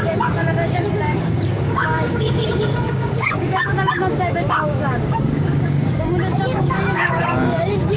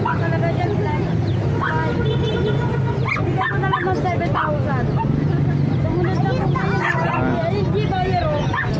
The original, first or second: second